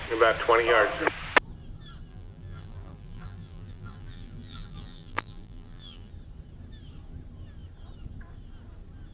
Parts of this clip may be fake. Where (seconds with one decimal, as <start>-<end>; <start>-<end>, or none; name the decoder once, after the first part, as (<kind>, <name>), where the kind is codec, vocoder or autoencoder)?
2.1-6.1 (vocoder, BigVGAN v2)